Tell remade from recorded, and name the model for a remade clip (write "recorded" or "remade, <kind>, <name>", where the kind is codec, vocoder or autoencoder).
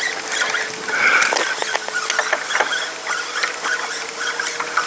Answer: recorded